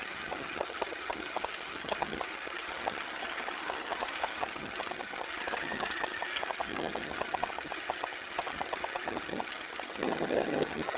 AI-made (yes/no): yes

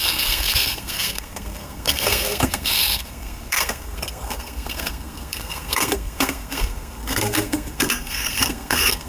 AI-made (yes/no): yes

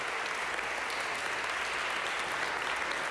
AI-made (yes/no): no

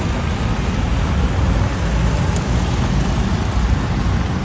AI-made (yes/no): no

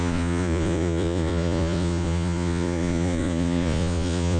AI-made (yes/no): yes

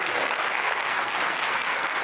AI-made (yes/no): yes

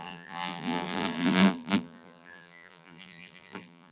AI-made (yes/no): yes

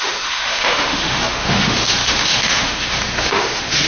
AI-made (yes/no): yes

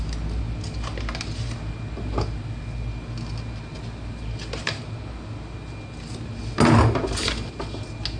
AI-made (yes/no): no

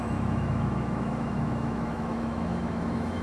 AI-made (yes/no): yes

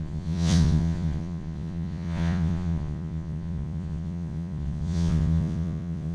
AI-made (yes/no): yes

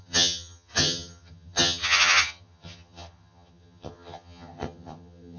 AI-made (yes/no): yes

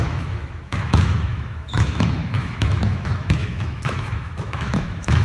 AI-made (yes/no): yes